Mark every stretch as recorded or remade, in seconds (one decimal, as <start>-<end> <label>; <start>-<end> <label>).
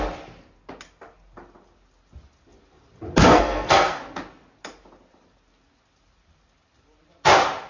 0.0-3.2 recorded; 3.2-4.0 remade; 4.0-7.7 recorded